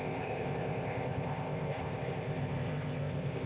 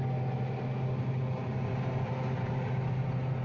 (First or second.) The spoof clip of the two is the first